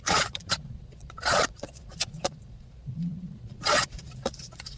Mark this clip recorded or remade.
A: remade